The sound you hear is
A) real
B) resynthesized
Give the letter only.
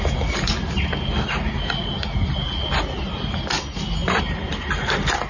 A